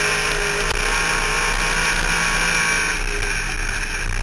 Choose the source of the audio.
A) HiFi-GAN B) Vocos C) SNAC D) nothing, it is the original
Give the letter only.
D